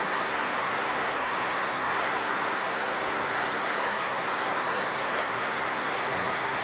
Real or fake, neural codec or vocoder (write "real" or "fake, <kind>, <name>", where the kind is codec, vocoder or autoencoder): fake, codec, SNAC